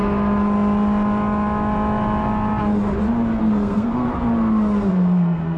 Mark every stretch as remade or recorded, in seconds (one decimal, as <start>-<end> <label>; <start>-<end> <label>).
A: 0.0-3.4 recorded; 3.4-4.1 remade; 4.1-4.9 recorded; 4.9-5.6 remade